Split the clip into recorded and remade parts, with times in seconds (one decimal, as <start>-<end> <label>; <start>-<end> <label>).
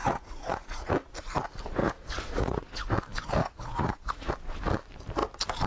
0.0-0.9 remade; 0.9-1.8 recorded; 1.8-2.9 remade; 2.9-3.4 recorded; 3.4-4.3 remade; 4.3-5.7 recorded